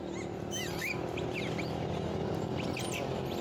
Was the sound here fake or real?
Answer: real